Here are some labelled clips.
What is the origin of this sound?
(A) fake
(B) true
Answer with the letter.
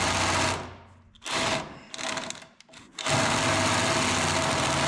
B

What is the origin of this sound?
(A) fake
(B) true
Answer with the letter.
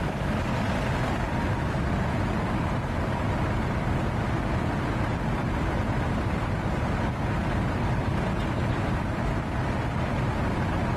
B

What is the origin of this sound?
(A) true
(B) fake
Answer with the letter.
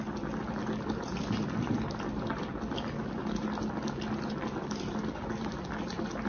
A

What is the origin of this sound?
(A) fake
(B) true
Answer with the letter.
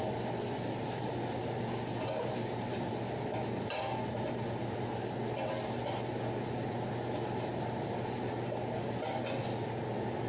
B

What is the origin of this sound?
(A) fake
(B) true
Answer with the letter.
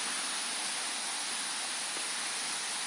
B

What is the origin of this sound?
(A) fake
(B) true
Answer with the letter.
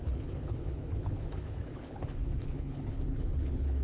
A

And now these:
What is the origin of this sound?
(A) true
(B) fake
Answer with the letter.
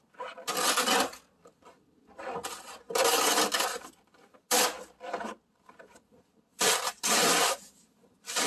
A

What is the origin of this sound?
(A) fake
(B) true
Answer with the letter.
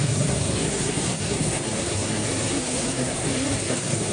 A